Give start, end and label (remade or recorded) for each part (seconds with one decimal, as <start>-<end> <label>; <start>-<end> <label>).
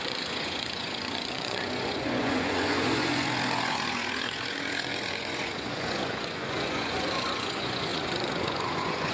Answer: 0.0-9.1 remade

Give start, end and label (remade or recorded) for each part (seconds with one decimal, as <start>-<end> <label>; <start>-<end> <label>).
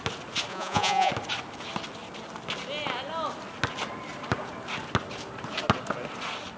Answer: 0.0-0.5 recorded; 0.5-1.1 remade; 1.1-6.6 recorded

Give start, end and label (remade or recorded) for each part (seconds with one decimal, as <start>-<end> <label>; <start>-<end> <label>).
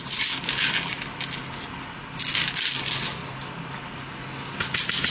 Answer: 0.0-5.1 recorded